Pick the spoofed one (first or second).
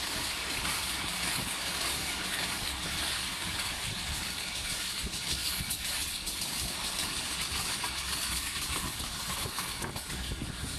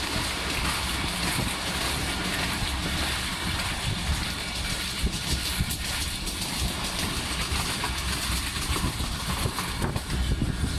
first